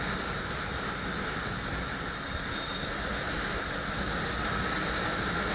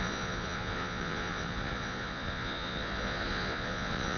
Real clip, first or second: first